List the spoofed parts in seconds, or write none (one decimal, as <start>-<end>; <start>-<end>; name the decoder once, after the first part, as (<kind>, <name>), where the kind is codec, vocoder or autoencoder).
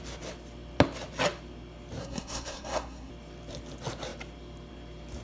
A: 2.0-3.1 (codec, SNAC)